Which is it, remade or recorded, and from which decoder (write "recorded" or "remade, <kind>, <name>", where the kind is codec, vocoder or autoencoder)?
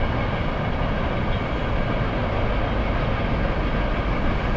recorded